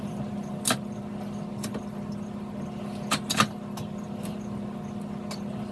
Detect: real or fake real